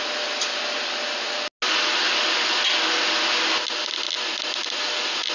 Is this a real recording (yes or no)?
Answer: yes